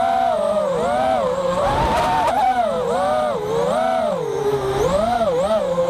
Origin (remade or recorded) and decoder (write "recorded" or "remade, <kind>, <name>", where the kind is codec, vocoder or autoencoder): remade, vocoder, BigVGAN v2